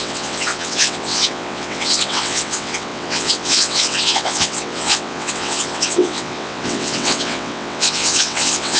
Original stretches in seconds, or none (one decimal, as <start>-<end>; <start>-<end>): none